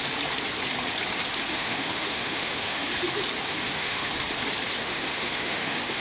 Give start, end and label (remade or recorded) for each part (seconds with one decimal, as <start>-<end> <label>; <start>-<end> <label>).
0.0-1.5 recorded; 1.5-2.9 remade; 2.9-3.5 recorded; 3.5-4.1 remade; 4.1-4.8 recorded; 4.8-6.0 remade